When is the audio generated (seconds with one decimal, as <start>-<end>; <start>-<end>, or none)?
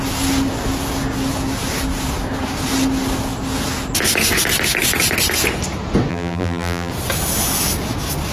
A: 6.1-6.9